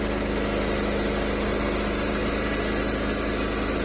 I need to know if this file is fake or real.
real